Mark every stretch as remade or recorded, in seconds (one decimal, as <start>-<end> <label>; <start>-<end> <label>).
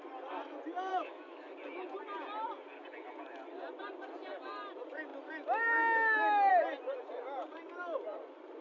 0.0-0.9 recorded; 0.9-1.5 remade; 1.5-8.6 recorded